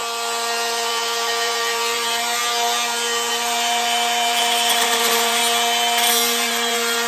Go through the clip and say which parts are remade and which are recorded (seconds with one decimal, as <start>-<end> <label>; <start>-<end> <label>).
0.0-0.9 recorded; 0.9-2.4 remade; 2.4-3.3 recorded; 3.3-5.4 remade; 5.4-6.1 recorded; 6.1-7.1 remade